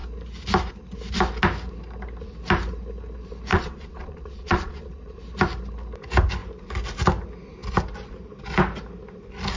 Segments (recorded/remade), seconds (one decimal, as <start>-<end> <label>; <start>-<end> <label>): 0.0-3.5 recorded; 3.5-5.2 remade; 5.2-9.6 recorded